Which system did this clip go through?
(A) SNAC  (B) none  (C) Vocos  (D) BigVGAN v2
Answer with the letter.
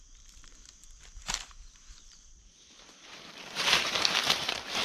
D